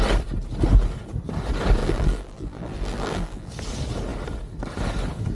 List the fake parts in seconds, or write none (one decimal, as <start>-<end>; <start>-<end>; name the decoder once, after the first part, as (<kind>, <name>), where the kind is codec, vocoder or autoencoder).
1.8-3.5 (vocoder, BigVGAN v2)